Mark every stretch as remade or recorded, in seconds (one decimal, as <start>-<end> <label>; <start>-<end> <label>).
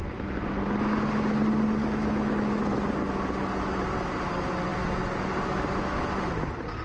0.0-1.8 recorded; 1.8-2.7 remade; 2.7-6.8 recorded